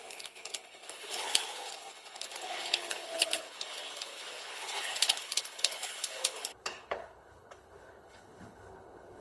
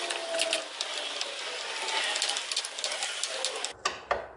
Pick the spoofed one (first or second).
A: first